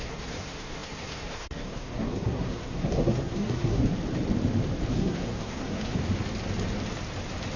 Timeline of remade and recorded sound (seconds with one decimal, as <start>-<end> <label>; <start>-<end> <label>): 0.0-3.8 remade; 3.8-4.9 recorded; 4.9-6.0 remade; 6.0-7.6 recorded